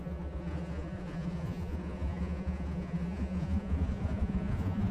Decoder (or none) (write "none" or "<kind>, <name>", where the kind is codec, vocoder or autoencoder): vocoder, Vocos